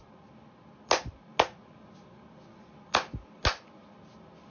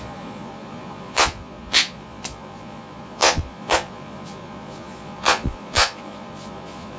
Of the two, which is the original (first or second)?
first